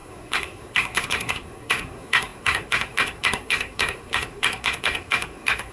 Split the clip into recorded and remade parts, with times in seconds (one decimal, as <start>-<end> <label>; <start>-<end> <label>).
0.0-5.7 remade